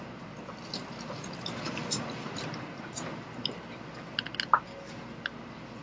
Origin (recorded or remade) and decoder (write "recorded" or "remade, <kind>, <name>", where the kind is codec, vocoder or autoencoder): recorded